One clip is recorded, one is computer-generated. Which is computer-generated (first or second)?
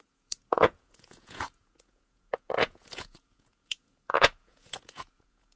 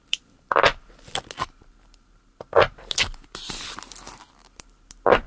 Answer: first